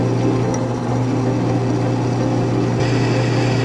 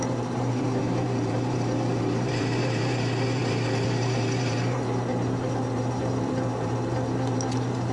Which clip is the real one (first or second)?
first